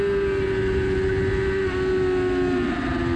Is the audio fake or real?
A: real